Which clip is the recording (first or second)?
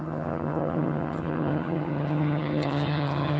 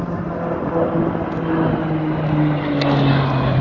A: second